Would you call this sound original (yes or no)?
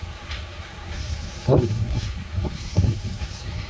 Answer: no